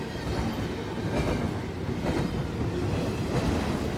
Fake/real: real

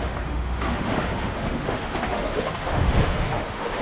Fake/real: fake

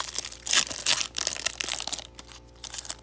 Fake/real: real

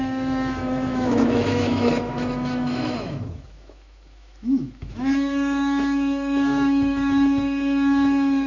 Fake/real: fake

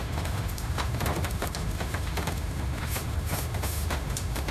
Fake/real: fake